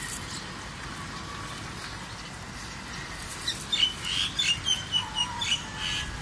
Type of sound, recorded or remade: recorded